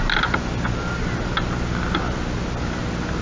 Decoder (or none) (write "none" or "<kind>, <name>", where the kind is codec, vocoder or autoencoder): none